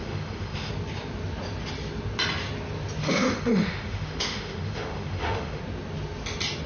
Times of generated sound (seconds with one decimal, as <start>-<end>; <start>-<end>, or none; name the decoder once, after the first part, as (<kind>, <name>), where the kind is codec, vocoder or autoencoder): 0.0-0.7 (autoencoder, DAC-VAE); 3.0-5.6